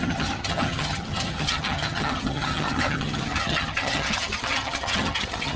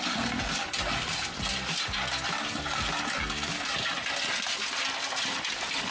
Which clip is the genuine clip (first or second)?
second